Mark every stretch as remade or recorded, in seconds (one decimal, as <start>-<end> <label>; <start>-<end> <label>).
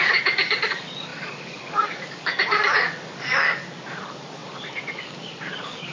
0.0-5.9 remade